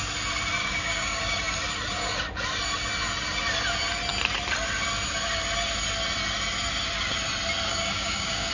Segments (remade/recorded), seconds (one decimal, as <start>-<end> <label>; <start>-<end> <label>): 0.0-0.6 recorded; 0.6-1.2 remade; 1.2-7.7 recorded; 7.7-8.5 remade